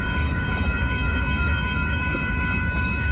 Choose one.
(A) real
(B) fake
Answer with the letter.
B